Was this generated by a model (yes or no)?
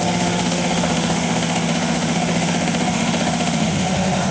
yes